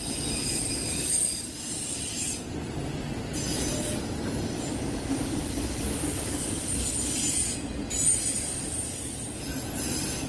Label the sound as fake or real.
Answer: real